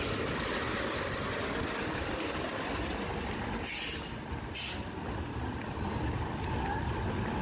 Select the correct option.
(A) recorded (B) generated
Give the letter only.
A